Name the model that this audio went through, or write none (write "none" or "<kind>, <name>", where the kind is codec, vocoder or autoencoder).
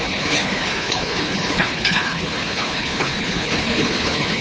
codec, HILCodec